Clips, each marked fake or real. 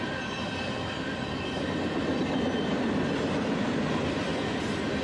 fake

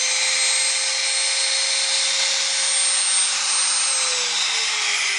real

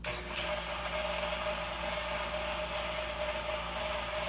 real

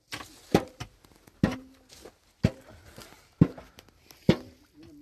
real